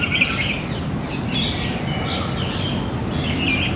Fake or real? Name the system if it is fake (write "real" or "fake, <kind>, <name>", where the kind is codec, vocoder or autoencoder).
real